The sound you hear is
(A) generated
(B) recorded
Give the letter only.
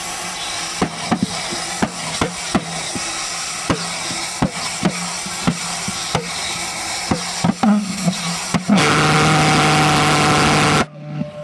B